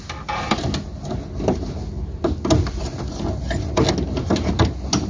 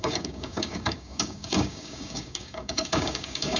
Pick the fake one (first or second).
second